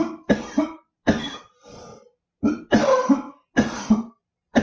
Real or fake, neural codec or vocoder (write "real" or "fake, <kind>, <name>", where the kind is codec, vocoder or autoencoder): real